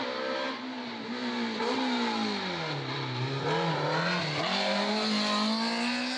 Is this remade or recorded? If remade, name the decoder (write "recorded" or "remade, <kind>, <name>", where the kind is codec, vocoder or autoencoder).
recorded